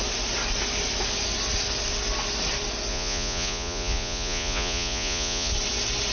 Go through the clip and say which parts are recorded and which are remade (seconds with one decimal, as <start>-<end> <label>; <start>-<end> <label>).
0.0-2.9 recorded; 2.9-5.5 remade; 5.5-6.1 recorded